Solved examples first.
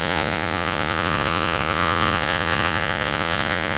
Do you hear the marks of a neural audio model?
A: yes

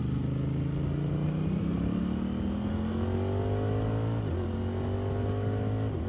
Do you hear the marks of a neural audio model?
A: no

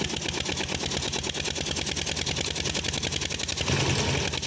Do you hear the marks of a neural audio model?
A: no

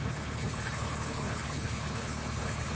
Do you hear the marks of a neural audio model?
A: yes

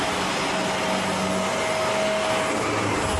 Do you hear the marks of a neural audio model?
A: no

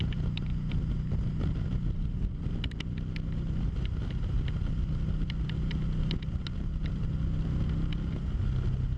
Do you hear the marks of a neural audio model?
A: no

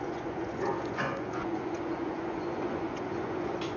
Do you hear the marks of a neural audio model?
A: yes